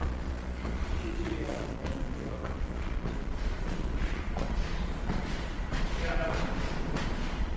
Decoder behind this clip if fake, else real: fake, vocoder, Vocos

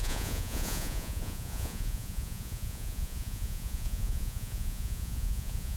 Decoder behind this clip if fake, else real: fake, vocoder, Vocos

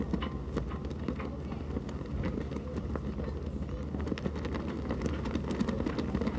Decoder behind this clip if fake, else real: real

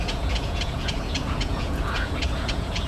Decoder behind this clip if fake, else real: fake, vocoder, Vocos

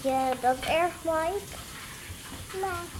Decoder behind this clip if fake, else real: real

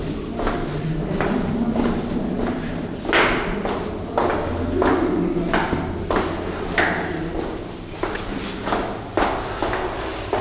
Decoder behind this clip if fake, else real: real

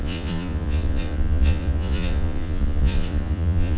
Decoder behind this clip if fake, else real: fake, vocoder, Vocos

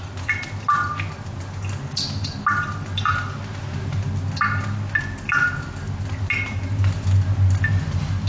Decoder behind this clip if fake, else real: real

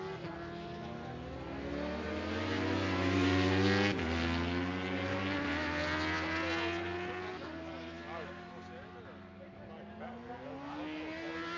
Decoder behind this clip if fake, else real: real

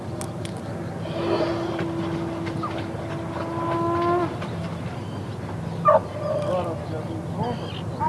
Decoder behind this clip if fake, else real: real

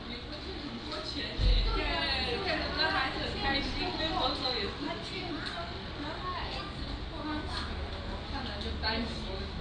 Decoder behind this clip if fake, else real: real